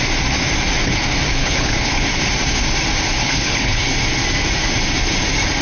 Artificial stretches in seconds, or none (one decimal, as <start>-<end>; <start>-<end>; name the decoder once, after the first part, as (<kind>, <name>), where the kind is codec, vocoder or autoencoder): 1.4-2.0 (codec, HILCodec); 3.2-3.9